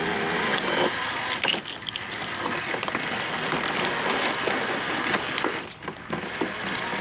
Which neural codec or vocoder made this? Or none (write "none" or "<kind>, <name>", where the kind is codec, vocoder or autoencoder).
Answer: none